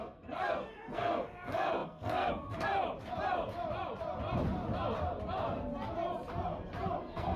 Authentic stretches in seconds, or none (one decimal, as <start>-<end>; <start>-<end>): 2.7-7.0